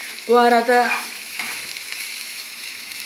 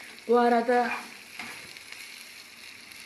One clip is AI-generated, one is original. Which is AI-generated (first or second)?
first